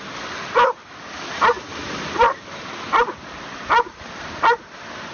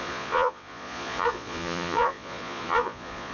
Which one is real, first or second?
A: first